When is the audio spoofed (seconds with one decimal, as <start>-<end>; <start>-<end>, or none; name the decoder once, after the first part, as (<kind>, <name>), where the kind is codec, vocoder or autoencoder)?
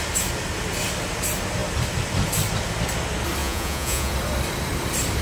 3.4-4.1 (vocoder, Vocos)